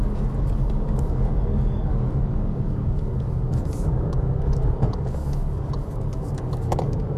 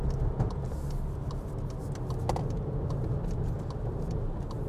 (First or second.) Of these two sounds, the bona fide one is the second